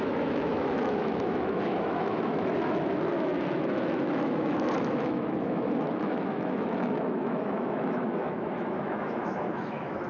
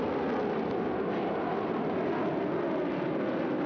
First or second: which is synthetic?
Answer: first